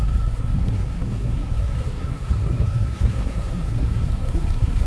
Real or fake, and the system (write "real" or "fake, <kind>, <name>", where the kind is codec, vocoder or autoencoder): fake, codec, SNAC